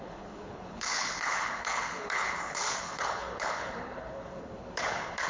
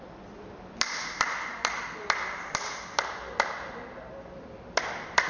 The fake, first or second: first